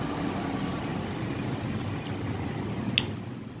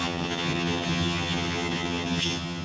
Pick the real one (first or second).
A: first